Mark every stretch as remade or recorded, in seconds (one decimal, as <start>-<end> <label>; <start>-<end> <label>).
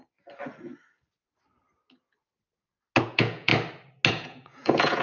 0.0-3.0 recorded; 3.0-3.5 remade; 3.5-4.1 recorded; 4.1-5.0 remade